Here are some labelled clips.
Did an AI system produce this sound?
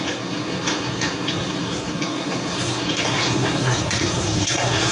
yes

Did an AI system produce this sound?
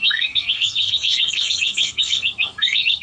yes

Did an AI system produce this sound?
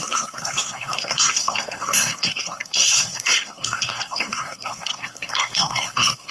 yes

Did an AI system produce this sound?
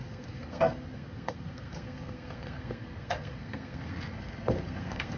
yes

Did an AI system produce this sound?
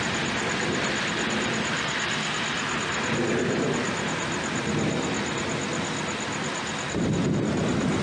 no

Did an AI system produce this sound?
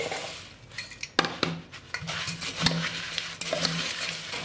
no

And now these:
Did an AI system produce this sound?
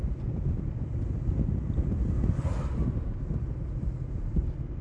no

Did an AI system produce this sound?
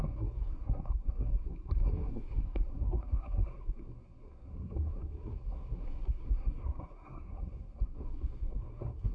yes